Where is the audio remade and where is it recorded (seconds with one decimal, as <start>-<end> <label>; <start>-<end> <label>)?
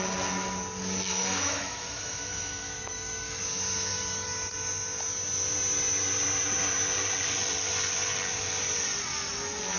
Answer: 0.0-1.1 recorded; 1.1-3.4 remade; 3.4-9.8 recorded